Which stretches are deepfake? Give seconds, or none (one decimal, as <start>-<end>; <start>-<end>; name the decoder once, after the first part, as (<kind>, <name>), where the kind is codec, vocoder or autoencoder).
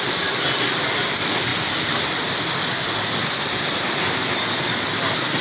none